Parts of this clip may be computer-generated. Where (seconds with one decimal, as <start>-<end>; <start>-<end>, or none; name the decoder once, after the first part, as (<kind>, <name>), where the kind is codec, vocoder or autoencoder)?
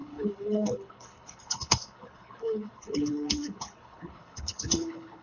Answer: 0.0-5.2 (codec, HILCodec)